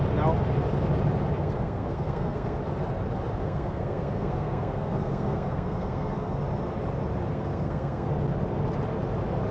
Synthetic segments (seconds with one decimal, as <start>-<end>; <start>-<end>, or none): 1.4-2.6; 3.4-6.4; 7.3-8.1